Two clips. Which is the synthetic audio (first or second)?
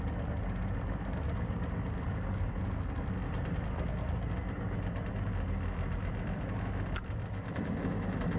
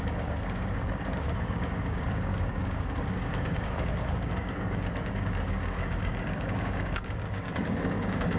second